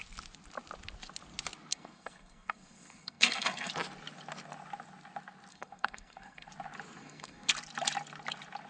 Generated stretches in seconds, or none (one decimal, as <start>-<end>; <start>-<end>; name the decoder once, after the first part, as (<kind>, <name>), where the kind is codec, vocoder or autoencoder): 1.7-3.7 (codec, SNAC); 5.5-6.5; 7.0-7.5